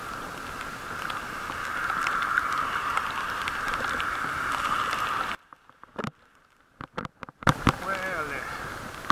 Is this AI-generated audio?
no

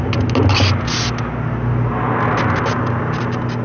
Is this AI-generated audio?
no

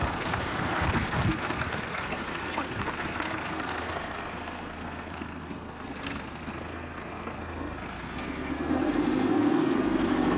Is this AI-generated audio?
yes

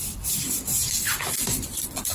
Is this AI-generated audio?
no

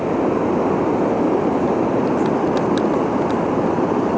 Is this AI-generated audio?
no